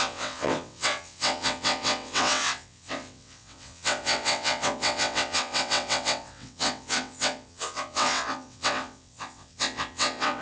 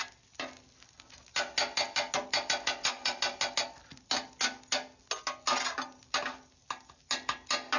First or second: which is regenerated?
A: first